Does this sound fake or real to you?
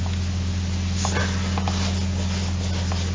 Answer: real